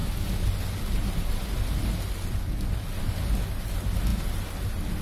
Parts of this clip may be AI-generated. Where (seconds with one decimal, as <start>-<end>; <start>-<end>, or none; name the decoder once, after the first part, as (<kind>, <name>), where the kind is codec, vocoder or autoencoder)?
none